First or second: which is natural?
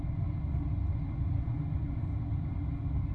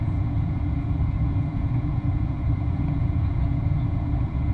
first